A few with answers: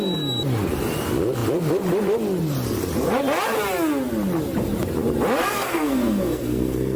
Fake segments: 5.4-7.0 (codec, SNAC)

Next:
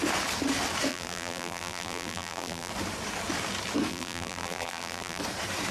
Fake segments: 0.9-2.7 (vocoder, BigVGAN v2); 3.9-5.2

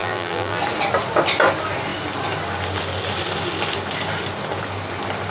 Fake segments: 0.0-0.6 (vocoder, BigVGAN v2)

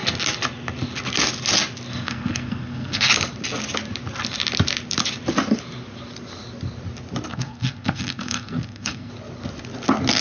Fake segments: 1.9-3.1 (codec, SNAC); 7.3-9.1

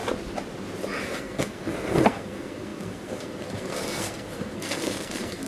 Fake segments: 1.0-5.5 (codec, SNAC)